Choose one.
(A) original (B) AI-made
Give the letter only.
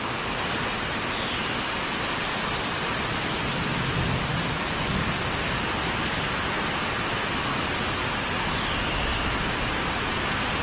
A